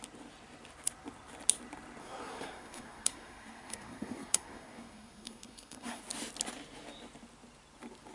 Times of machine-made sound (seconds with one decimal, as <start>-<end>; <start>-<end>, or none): 2.0-6.0